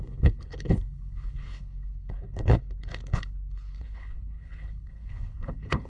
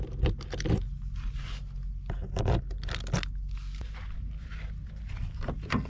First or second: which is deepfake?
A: first